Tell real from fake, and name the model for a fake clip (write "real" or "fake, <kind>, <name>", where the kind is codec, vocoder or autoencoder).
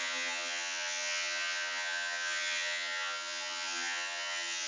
fake, vocoder, HiFi-GAN